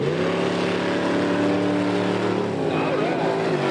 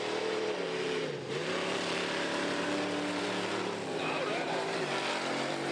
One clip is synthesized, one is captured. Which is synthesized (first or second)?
second